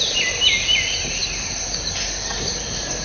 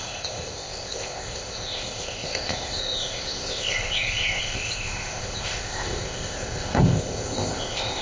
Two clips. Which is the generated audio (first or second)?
second